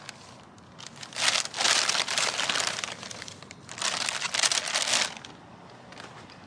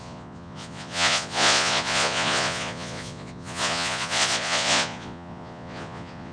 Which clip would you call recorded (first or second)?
first